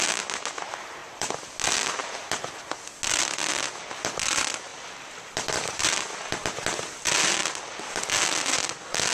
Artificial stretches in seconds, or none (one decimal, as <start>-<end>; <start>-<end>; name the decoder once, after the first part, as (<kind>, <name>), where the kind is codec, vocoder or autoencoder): 1.0-1.5 (vocoder, BigVGAN v2); 4.7-5.8; 7.4-8.1